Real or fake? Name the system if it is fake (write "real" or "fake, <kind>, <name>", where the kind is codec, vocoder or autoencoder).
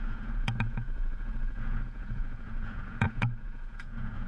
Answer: fake, vocoder, Vocos